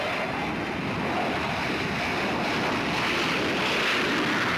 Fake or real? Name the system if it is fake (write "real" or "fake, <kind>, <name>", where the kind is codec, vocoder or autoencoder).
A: real